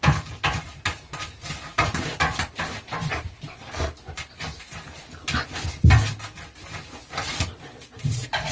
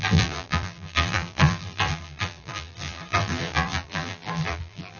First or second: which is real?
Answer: first